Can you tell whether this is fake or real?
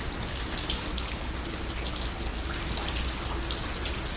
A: real